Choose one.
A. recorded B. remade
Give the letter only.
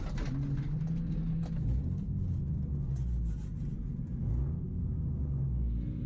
A